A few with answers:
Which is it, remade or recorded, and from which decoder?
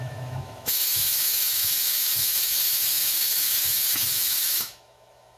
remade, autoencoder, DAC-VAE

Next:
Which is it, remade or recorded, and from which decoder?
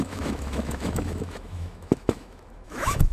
remade, autoencoder, DAC-VAE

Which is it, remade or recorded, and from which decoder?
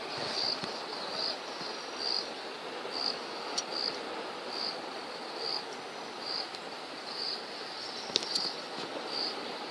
recorded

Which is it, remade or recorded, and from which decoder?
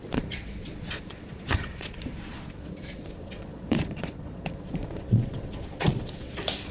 remade, vocoder, Vocos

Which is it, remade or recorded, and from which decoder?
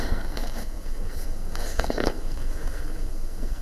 remade, codec, SNAC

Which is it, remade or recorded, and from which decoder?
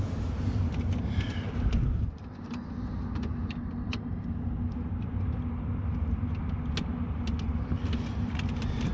recorded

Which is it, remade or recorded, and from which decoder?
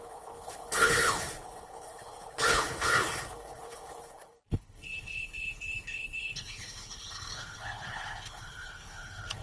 remade, codec, HILCodec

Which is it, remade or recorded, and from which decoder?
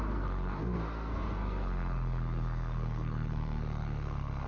remade, codec, SNAC